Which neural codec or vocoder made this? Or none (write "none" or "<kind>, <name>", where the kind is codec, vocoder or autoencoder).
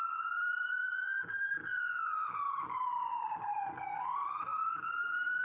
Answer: none